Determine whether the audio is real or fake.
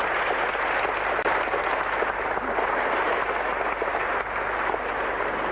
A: real